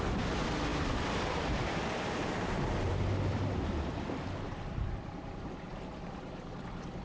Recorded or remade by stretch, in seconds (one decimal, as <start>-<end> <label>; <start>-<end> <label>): 0.0-0.7 recorded; 0.7-4.9 remade; 4.9-7.0 recorded